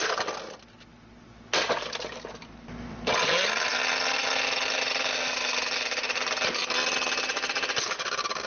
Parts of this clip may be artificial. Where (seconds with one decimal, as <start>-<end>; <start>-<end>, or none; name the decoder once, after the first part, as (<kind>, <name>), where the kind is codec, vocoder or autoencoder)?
none